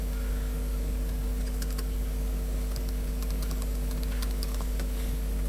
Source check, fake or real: fake